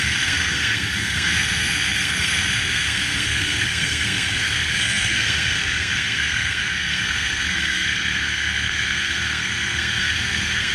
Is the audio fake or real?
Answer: fake